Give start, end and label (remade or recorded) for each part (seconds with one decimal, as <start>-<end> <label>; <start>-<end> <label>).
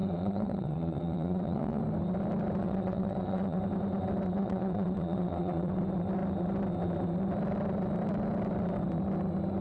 0.0-1.8 remade; 1.8-2.6 recorded; 2.6-3.6 remade; 3.6-4.4 recorded; 4.4-5.8 remade; 5.8-9.6 recorded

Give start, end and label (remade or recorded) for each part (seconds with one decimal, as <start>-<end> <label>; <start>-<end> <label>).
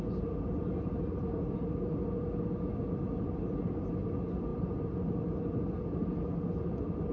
0.0-7.1 recorded